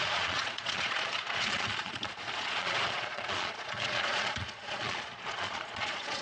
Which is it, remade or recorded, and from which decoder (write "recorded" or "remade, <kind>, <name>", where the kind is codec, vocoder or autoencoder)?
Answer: remade, vocoder, Vocos